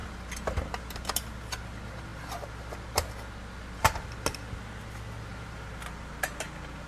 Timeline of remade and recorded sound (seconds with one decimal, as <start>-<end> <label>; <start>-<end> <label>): 0.0-6.9 recorded